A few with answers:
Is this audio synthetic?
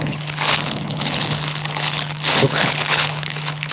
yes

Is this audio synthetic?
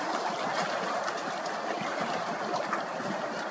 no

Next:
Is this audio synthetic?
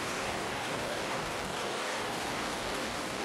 yes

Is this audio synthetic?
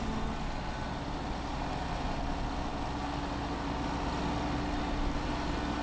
no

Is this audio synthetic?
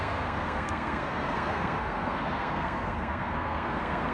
yes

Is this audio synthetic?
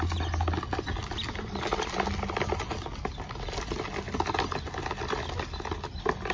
no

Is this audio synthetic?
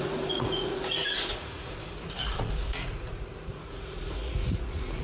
yes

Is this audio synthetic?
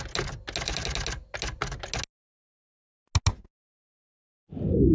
no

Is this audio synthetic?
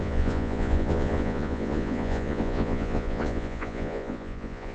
yes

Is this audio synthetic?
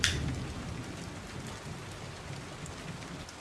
no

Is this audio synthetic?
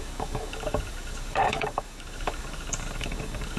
yes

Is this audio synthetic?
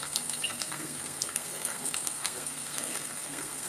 yes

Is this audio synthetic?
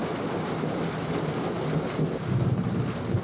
no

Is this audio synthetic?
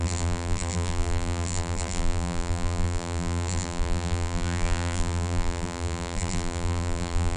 yes